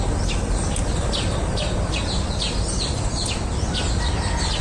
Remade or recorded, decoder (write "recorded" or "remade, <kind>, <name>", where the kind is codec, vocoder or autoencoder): recorded